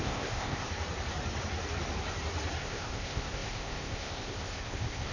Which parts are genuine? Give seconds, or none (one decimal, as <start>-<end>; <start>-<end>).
0.7-2.6